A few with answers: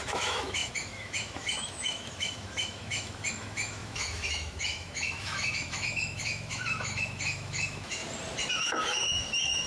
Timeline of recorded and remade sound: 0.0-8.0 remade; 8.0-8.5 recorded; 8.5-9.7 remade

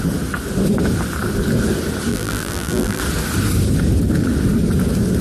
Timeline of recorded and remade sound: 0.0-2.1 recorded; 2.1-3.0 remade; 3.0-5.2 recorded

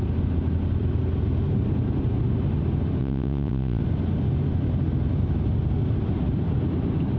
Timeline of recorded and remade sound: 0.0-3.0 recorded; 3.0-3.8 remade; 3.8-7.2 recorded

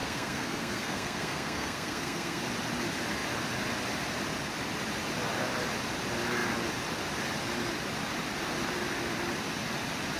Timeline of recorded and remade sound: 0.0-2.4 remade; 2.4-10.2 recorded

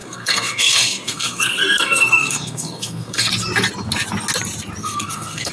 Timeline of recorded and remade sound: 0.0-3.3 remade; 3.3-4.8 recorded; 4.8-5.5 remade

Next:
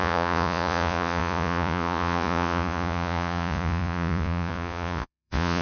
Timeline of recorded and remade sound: 0.0-5.6 remade

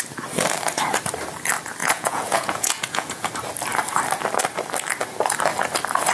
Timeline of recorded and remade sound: 0.0-1.8 recorded; 1.8-3.3 remade; 3.3-6.1 recorded

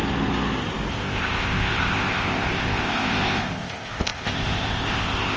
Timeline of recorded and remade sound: 0.0-0.9 recorded; 0.9-5.4 remade